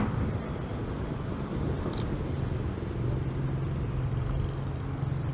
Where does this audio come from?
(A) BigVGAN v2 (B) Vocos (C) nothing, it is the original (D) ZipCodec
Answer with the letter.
C